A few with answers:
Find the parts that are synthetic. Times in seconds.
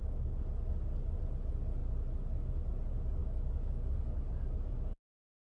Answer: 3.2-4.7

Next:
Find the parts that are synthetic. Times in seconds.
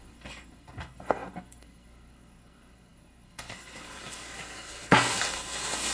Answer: 0.0-5.9